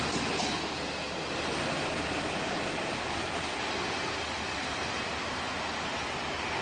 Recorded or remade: recorded